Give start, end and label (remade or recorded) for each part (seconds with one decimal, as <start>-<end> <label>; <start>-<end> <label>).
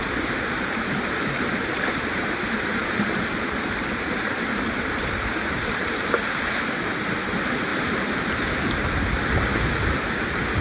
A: 0.0-10.6 remade